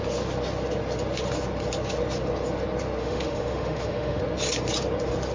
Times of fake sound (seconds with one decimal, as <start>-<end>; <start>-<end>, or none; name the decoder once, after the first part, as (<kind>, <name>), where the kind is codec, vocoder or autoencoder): 3.0-4.2 (autoencoder, DAC-VAE)